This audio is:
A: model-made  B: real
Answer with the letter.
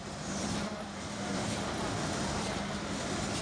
A